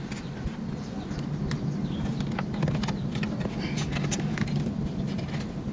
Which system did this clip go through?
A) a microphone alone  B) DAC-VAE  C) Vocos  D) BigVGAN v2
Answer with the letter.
A